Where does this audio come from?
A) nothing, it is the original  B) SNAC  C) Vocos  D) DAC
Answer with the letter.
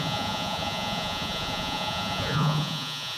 C